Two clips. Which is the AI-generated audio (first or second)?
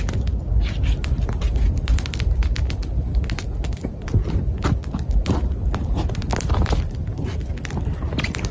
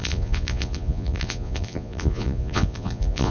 second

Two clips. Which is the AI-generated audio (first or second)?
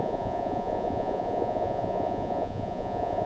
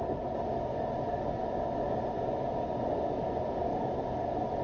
first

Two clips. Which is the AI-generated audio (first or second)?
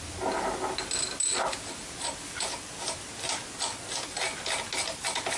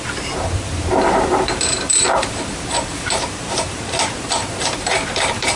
second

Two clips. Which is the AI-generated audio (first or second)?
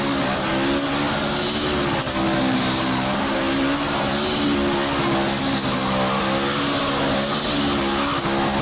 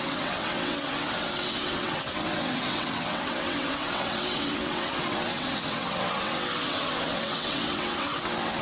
second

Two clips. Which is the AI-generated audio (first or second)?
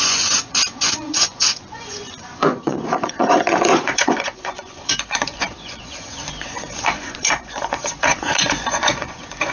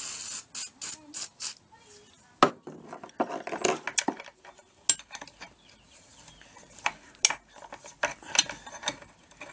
first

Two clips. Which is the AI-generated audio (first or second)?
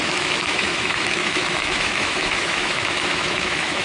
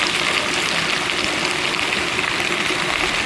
first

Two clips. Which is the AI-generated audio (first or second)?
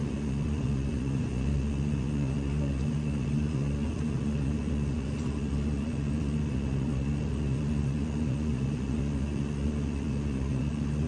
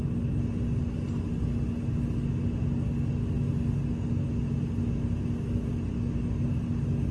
first